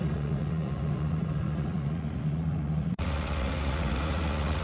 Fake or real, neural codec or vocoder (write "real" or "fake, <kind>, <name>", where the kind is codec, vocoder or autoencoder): fake, vocoder, Vocos